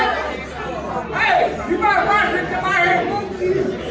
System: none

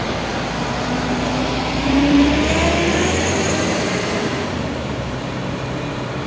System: vocoder, BigVGAN v2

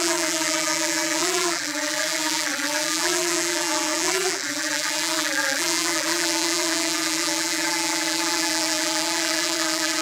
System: vocoder, BigVGAN v2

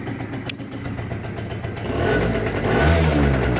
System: none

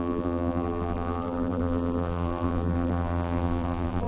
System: vocoder, BigVGAN v2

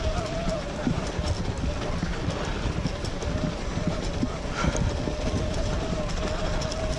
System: none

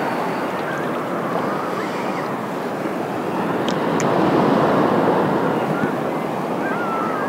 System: none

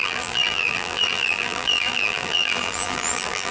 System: vocoder, BigVGAN v2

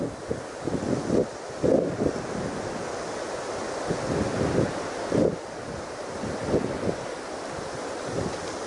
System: none